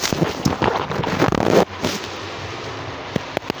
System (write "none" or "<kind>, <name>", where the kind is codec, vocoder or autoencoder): none